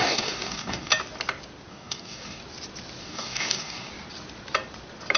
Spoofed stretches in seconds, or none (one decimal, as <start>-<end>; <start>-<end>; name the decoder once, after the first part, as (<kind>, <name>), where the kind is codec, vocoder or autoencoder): 0.0-0.9 (codec, DAC); 1.7-2.4; 3.0-3.9